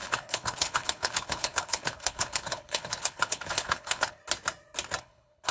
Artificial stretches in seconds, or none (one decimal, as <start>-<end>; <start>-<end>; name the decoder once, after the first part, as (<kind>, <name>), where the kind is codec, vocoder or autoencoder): 0.0-4.2 (codec, HILCodec); 5.0-5.5